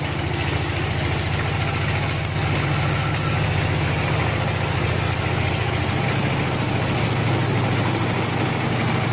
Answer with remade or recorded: recorded